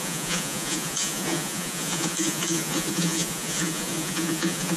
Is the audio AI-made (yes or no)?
yes